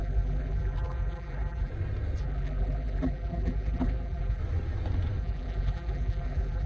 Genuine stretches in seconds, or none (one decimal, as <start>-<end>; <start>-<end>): 1.7-2.2; 4.4-5.2